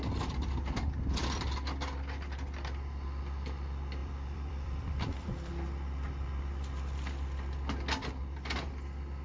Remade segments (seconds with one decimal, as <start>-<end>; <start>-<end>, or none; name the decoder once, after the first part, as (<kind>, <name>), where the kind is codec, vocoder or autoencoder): 4.0-5.5 (vocoder, BigVGAN v2)